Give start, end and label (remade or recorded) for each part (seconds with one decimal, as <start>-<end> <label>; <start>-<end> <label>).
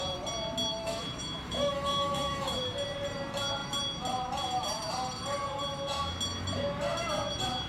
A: 0.0-0.8 recorded; 0.8-2.6 remade; 2.6-7.7 recorded